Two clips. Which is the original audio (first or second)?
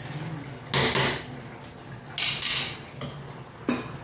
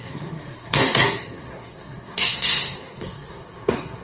first